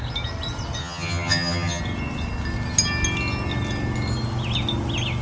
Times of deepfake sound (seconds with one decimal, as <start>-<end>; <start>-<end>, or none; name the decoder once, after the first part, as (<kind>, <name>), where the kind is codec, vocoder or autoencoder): 0.8-1.8 (vocoder, HiFi-GAN)